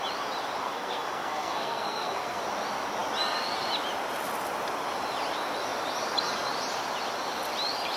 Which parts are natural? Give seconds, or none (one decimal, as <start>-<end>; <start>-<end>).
0.0-0.6; 2.4-8.0